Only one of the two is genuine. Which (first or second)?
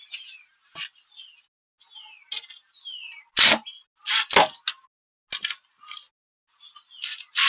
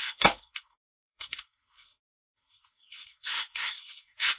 first